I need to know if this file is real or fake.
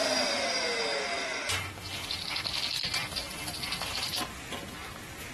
real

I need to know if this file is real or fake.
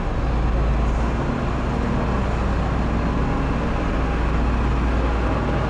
real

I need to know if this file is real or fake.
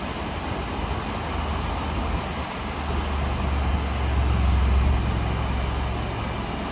real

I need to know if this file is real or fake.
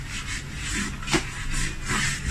real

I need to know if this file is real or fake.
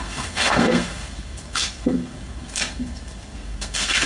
fake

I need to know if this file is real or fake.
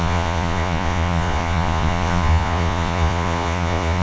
fake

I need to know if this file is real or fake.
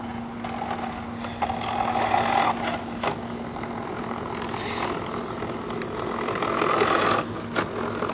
real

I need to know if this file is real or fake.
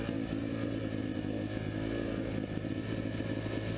real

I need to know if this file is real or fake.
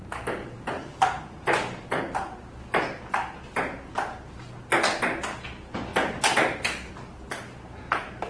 real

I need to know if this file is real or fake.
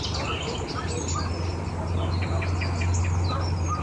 real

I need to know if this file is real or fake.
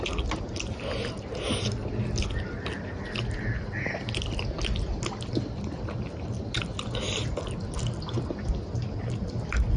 real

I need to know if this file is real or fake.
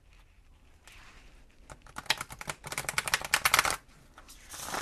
real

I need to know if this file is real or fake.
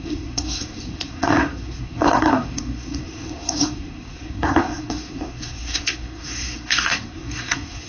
fake